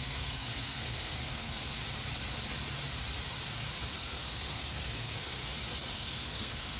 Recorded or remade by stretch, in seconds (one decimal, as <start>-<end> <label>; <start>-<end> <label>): 0.0-1.8 remade; 1.8-3.9 recorded; 3.9-5.4 remade; 5.4-5.9 recorded; 5.9-6.8 remade